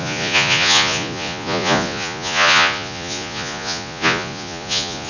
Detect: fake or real fake